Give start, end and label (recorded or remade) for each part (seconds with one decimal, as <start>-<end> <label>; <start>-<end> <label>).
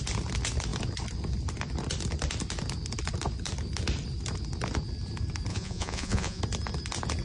0.0-5.5 recorded; 5.5-6.4 remade; 6.4-7.2 recorded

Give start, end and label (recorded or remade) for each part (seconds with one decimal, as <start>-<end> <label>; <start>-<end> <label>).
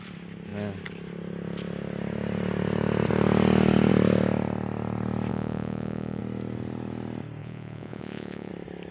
0.0-5.3 recorded; 5.3-6.2 remade; 6.2-7.4 recorded; 7.4-8.5 remade; 8.5-8.9 recorded